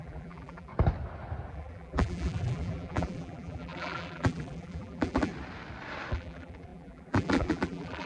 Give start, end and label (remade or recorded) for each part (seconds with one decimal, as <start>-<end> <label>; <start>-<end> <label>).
0.0-0.7 remade; 0.7-1.5 recorded; 1.5-5.3 remade; 5.3-6.1 recorded; 6.1-8.1 remade